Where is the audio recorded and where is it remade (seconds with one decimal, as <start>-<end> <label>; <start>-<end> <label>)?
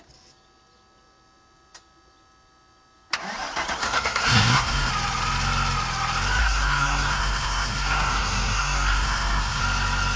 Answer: 0.0-3.8 recorded; 3.8-4.9 remade; 4.9-6.4 recorded; 6.4-9.6 remade; 9.6-10.2 recorded